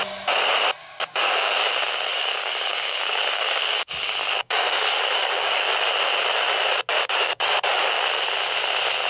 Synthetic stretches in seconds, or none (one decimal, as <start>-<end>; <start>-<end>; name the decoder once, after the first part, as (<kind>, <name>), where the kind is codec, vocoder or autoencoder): 0.8-1.7 (codec, DAC); 2.1-5.7; 6.9-8.0